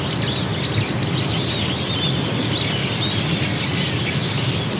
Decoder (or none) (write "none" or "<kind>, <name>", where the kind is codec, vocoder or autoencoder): none